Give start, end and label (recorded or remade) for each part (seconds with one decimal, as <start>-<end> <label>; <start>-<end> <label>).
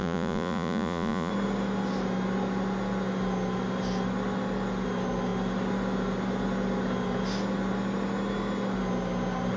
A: 0.0-1.3 remade; 1.3-9.6 recorded